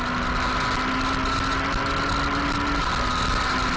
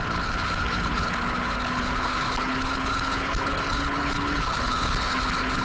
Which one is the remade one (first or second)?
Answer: second